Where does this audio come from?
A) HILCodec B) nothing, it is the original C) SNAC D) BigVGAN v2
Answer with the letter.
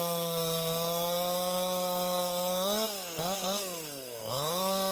C